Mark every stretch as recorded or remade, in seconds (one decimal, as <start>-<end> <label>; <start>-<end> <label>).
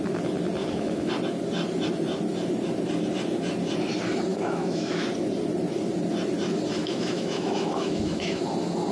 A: 0.0-0.6 recorded; 0.6-1.1 remade; 1.1-4.3 recorded; 4.3-5.0 remade; 5.0-6.8 recorded; 6.8-8.4 remade; 8.4-8.9 recorded